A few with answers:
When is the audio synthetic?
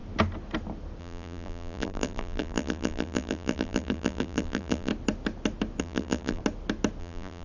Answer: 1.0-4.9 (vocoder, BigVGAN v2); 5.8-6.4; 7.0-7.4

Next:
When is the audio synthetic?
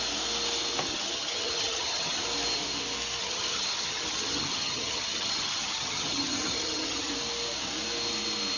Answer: 0.9-2.2 (vocoder, HiFi-GAN); 3.2-7.1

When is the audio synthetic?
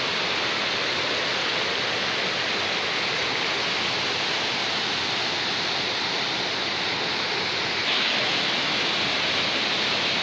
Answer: 7.8-8.9 (autoencoder, DAC-VAE)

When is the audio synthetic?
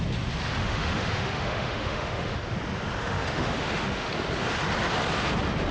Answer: 0.6-2.4 (autoencoder, DAC-VAE); 3.0-4.1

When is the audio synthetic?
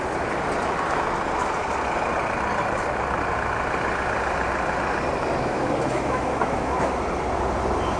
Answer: 5.4-6.9 (autoencoder, DAC-VAE)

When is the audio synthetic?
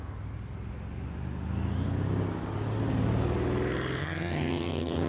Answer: 4.0-5.1 (vocoder, HiFi-GAN)